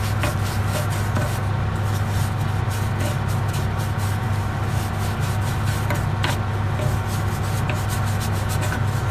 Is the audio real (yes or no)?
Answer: yes